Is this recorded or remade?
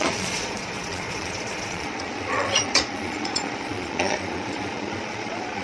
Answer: remade